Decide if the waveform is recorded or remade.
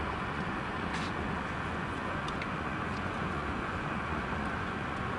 remade